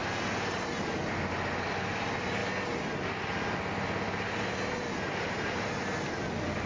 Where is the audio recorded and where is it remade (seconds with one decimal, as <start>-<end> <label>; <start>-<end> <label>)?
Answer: 0.0-6.7 recorded